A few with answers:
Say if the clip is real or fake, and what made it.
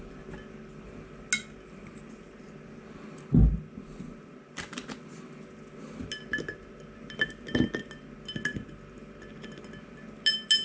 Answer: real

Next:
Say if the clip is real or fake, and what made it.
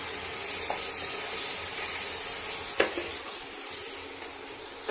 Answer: real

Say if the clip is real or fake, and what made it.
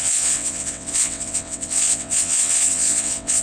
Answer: fake, vocoder, WaveNeXt